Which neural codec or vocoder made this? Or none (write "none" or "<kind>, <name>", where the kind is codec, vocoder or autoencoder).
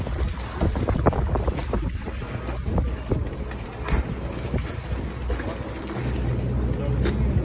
none